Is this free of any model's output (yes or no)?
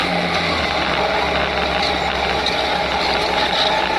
yes